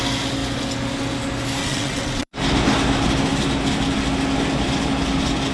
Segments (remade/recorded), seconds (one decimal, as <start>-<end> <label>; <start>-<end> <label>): 0.0-1.6 recorded; 1.6-2.3 remade; 2.3-5.5 recorded